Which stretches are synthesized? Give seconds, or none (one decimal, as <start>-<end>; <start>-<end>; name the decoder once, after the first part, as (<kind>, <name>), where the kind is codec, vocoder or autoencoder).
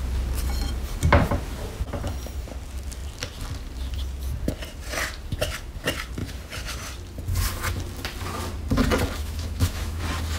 9.2-10.0 (autoencoder, DAC-VAE)